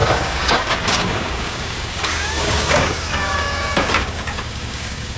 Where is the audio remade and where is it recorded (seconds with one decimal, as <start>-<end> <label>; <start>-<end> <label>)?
0.0-5.2 remade